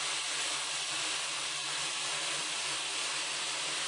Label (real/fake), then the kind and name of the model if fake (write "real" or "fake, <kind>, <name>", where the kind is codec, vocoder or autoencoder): real